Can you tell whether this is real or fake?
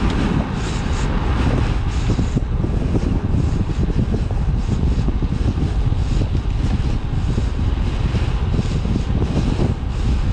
real